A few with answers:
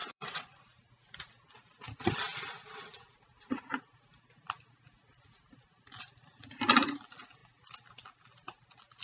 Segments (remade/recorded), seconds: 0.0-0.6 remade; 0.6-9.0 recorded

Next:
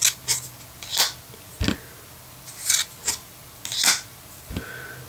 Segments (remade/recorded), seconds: 0.0-5.1 recorded

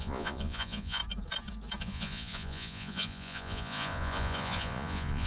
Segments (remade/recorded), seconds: 0.0-1.0 remade; 1.0-1.8 recorded; 1.8-5.3 remade

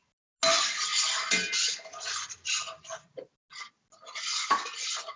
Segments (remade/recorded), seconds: 0.0-5.2 recorded

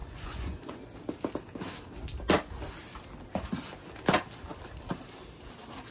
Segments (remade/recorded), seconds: 0.0-0.8 remade; 0.8-5.9 recorded

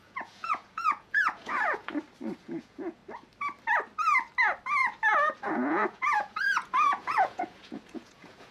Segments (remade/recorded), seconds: 0.0-1.9 remade; 1.9-2.4 recorded; 2.4-3.0 remade; 3.0-5.5 recorded; 5.5-8.5 remade

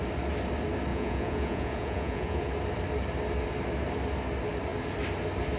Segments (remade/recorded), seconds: 0.0-0.9 recorded; 0.9-2.5 remade; 2.5-5.6 recorded

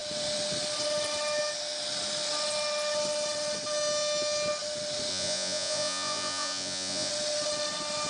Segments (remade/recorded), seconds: 0.0-5.1 recorded; 5.1-7.1 remade; 7.1-8.1 recorded